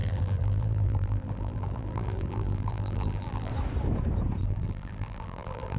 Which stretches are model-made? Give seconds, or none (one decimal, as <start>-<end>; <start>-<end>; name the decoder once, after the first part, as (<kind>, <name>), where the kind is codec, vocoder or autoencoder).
0.0-3.5 (vocoder, BigVGAN v2); 4.4-5.8